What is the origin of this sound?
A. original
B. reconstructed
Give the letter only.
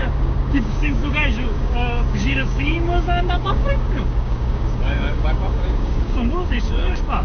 B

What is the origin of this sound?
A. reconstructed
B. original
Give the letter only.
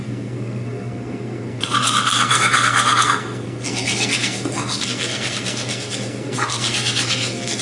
A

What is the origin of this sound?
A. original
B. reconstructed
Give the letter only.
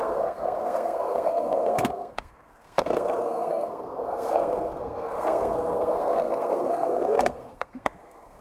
B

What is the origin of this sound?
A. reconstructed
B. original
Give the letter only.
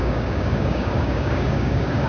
A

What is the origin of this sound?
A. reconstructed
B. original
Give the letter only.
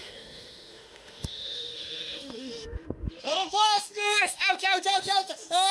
A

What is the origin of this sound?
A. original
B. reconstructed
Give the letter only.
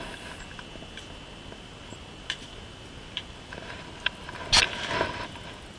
A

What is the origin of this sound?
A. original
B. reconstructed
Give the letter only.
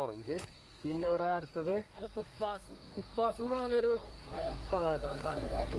B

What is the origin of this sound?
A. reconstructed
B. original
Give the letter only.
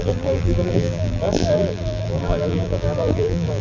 A